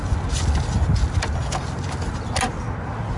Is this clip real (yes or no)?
yes